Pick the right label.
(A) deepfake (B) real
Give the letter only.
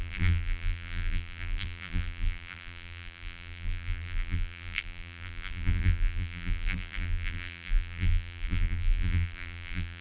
A